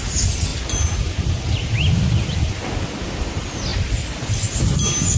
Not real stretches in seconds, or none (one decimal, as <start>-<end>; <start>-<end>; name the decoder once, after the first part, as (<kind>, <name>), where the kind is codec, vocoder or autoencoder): none